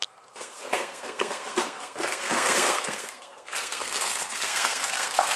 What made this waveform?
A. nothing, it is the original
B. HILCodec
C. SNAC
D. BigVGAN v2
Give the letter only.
C